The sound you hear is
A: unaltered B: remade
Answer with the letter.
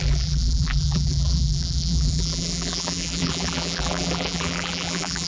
B